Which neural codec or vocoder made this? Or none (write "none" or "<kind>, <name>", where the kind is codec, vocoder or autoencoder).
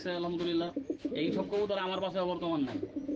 autoencoder, DAC-VAE